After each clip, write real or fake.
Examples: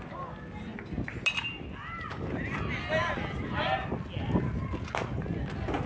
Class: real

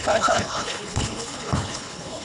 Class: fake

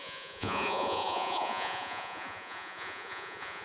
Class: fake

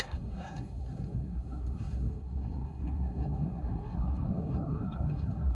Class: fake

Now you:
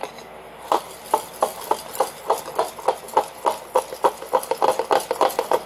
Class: real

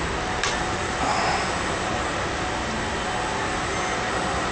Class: real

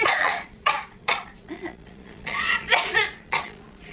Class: fake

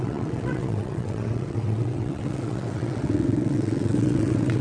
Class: fake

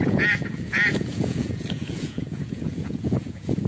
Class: fake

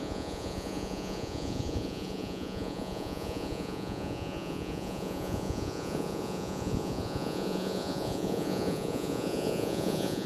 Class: fake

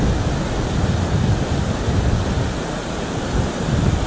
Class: real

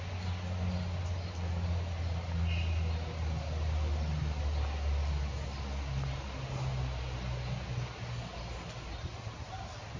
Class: real